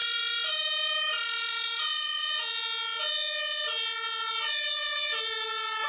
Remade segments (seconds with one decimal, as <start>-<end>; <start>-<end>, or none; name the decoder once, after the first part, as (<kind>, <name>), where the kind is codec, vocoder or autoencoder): 0.0-2.3 (vocoder, BigVGAN v2)